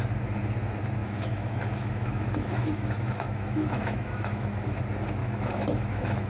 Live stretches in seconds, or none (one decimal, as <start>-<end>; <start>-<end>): 0.0-1.0; 4.8-5.2